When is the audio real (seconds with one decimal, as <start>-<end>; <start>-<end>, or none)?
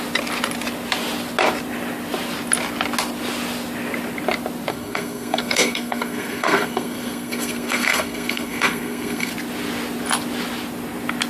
0.0-4.7; 9.3-11.3